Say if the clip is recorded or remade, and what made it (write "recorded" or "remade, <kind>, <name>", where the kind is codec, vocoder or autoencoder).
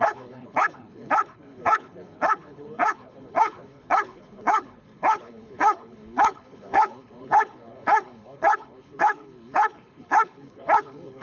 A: remade, codec, HILCodec